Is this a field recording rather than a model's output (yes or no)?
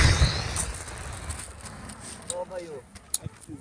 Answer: yes